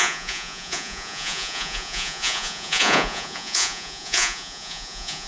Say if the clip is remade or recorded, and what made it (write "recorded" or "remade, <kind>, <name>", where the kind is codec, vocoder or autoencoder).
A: remade, vocoder, Vocos